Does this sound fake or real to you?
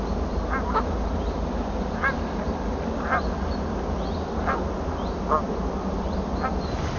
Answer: real